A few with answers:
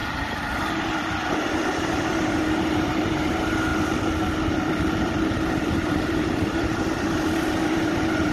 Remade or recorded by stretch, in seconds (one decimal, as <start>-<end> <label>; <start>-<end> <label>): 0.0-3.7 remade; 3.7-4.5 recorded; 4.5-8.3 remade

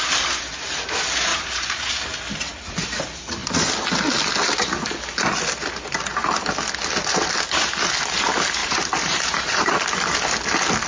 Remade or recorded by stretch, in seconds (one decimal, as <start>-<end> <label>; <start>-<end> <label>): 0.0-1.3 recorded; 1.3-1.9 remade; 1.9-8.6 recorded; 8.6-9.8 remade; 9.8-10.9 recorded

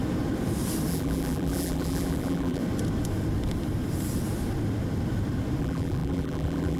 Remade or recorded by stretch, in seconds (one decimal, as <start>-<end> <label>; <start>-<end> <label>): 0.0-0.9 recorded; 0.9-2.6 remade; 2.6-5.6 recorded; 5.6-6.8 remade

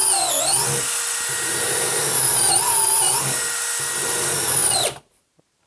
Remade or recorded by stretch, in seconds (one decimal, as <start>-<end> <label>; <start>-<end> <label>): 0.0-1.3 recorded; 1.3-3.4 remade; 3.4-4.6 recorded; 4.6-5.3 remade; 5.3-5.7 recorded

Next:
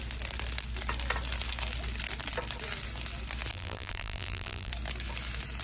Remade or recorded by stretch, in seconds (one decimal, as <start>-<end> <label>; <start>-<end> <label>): 0.0-3.5 recorded; 3.5-4.7 remade; 4.7-5.6 recorded

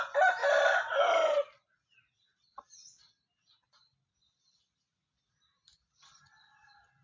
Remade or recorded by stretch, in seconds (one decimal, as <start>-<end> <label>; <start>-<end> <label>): 0.0-7.0 recorded

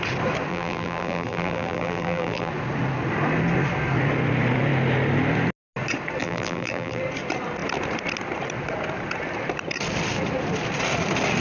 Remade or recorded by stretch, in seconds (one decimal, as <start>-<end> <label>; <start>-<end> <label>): 0.0-0.5 recorded; 0.5-2.5 remade; 2.5-6.2 recorded; 6.2-7.0 remade; 7.0-11.4 recorded